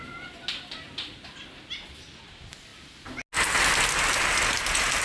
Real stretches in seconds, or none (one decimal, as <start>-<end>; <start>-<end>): 0.0-5.0